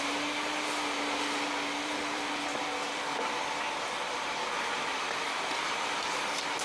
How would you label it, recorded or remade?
remade